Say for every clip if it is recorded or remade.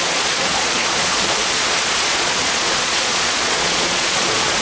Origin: remade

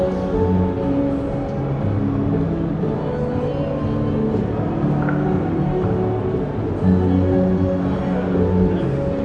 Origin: recorded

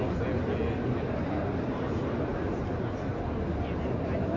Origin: recorded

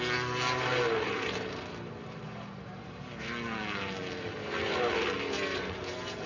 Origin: recorded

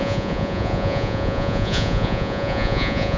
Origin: remade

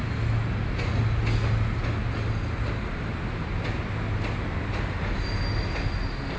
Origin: recorded